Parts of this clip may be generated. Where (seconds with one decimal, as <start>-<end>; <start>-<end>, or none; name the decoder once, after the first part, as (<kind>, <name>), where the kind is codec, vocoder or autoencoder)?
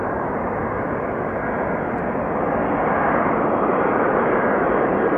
0.0-0.6 (vocoder, BigVGAN v2); 3.7-5.2